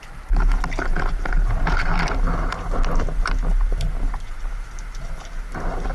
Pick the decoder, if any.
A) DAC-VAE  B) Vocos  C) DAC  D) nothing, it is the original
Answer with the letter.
D